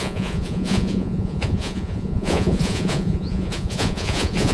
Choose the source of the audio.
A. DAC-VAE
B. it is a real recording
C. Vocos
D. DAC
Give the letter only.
C